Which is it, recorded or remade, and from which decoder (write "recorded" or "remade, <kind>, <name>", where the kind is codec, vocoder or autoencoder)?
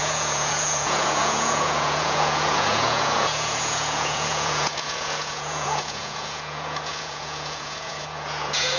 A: remade, vocoder, Vocos